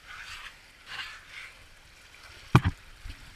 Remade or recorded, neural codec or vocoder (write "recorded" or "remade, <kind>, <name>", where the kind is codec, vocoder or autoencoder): recorded